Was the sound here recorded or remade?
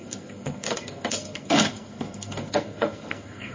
remade